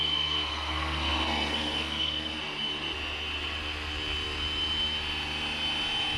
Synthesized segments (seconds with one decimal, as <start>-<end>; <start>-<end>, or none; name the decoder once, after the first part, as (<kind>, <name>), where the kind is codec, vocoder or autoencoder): 0.0-2.3 (codec, SNAC)

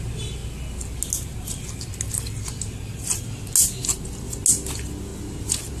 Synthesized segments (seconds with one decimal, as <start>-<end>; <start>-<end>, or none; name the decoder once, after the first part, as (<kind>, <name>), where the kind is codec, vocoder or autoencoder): none

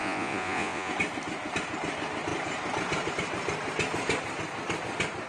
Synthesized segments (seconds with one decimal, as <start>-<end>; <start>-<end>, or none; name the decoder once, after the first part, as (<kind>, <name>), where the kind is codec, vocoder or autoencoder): 0.0-0.9 (vocoder, Vocos)

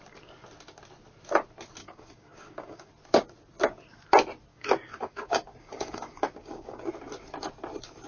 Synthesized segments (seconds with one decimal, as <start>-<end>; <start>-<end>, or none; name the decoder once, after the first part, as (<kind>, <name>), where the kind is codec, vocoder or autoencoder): 1.8-2.9 (codec, DAC); 4.5-6.9

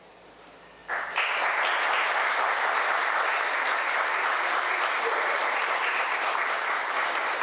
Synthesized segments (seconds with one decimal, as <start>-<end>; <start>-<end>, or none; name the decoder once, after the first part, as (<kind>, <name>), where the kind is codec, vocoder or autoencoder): none